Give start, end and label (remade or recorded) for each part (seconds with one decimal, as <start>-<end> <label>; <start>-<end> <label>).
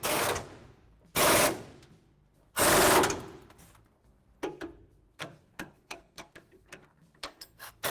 0.0-0.5 remade; 0.5-5.2 recorded; 5.2-7.9 remade